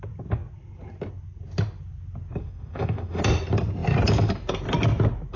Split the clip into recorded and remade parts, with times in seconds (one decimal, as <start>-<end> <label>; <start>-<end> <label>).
0.0-2.4 recorded; 2.4-3.2 remade; 3.2-5.4 recorded